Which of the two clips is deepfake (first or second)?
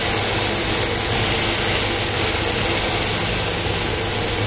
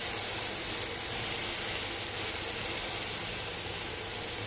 second